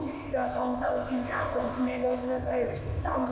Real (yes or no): no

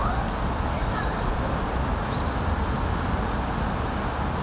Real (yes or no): yes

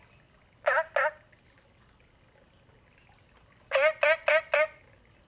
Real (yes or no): yes